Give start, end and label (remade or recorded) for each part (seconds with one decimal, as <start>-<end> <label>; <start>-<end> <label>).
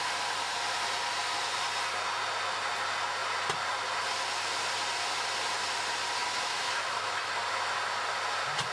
0.0-6.2 recorded; 6.2-7.3 remade; 7.3-8.7 recorded